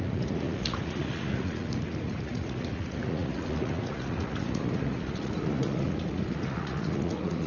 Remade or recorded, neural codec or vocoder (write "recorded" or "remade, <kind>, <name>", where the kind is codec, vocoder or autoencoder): remade, vocoder, Vocos